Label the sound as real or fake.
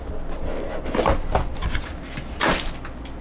real